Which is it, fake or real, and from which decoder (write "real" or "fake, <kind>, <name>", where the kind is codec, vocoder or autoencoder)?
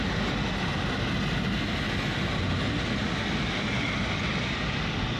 real